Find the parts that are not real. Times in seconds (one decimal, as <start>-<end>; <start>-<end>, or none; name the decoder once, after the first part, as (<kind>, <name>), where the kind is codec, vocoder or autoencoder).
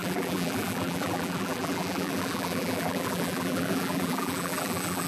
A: 0.0-5.1 (vocoder, BigVGAN v2)